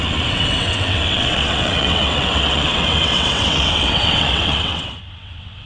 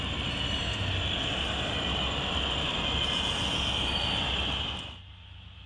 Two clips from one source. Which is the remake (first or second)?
first